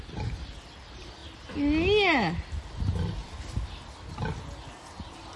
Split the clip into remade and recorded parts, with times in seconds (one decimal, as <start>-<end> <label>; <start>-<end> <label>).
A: 0.0-5.4 recorded